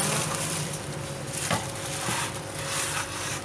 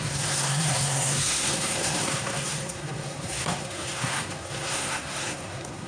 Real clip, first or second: first